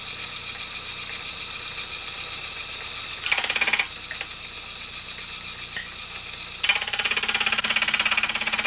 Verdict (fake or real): real